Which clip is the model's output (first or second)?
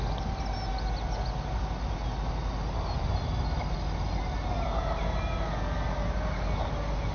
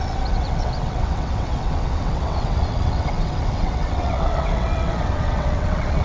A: second